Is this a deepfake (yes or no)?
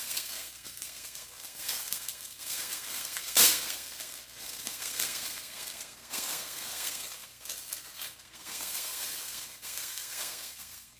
yes